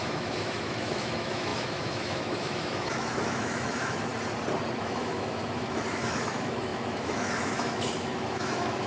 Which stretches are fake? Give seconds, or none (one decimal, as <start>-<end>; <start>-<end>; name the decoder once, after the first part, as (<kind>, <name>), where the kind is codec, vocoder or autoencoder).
0.0-4.1 (autoencoder, DAC-VAE); 4.8-8.9